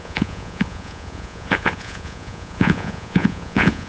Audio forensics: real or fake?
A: fake